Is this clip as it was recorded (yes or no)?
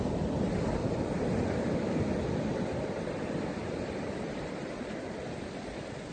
yes